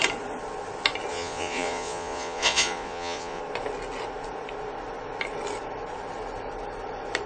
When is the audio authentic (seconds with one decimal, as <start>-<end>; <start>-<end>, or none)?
0.0-1.1; 3.4-7.3